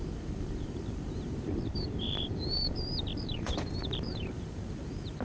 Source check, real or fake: fake